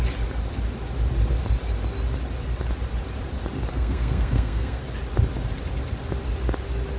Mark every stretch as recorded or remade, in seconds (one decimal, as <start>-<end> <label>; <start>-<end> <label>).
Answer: 0.0-3.7 recorded; 3.7-4.8 remade; 4.8-7.0 recorded